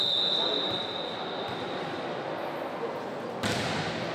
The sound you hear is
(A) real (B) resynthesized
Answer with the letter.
A